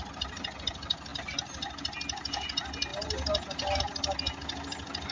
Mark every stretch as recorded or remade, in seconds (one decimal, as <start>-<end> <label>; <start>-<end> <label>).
0.0-5.1 recorded